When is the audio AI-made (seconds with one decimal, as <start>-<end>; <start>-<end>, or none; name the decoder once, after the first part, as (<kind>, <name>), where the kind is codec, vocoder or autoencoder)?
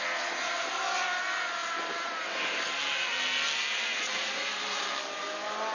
none